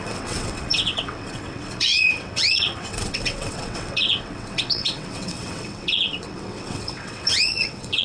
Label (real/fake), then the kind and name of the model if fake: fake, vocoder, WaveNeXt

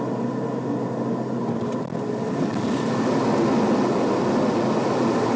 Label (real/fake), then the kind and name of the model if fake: real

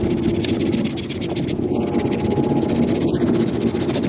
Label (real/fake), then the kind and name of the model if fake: real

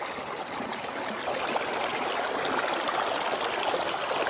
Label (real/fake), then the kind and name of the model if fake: real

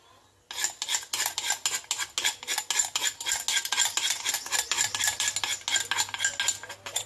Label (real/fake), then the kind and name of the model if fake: real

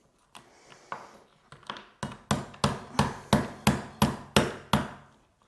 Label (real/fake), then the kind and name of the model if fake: real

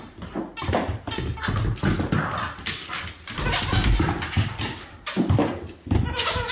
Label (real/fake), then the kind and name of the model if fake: real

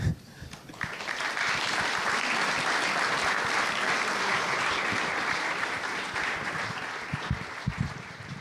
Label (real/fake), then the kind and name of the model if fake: real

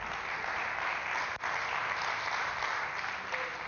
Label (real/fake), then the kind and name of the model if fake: real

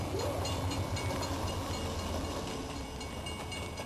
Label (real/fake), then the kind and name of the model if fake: real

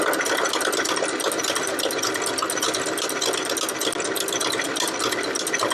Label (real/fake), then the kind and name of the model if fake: real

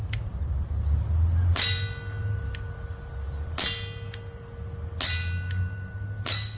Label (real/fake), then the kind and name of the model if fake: real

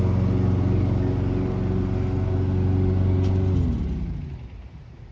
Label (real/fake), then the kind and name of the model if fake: real